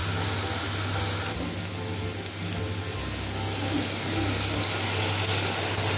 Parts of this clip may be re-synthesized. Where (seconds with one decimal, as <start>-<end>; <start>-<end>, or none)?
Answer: none